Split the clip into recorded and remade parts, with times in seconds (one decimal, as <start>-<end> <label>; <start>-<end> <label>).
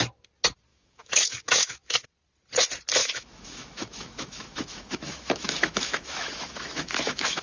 0.0-0.7 recorded; 0.7-2.1 remade; 2.1-3.0 recorded; 3.0-7.4 remade